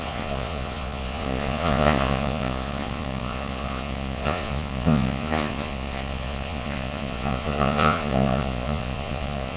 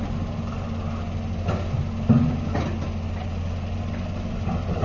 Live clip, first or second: second